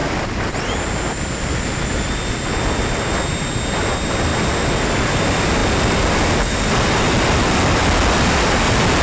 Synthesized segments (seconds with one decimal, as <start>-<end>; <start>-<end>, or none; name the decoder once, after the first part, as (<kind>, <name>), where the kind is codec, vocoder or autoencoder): none